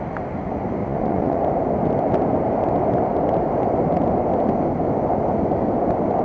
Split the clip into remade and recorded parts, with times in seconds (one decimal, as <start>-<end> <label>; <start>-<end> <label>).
0.0-0.8 recorded; 0.8-1.4 remade; 1.4-6.2 recorded